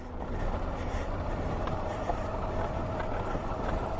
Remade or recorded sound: recorded